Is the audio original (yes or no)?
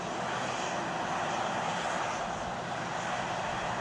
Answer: yes